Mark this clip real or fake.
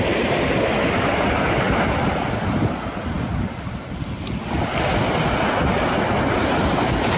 real